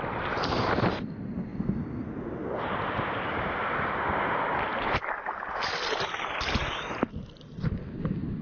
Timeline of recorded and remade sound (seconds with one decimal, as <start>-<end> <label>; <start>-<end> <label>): 0.0-8.4 recorded